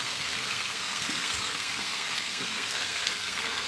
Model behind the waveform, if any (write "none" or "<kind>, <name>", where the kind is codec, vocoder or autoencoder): codec, SNAC